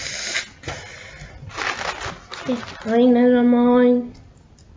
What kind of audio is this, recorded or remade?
recorded